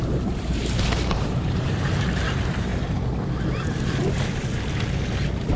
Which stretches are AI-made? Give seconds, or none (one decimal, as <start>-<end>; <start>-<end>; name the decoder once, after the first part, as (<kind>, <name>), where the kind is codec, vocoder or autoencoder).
0.0-2.7 (vocoder, BigVGAN v2)